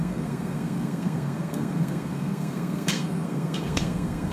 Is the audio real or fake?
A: fake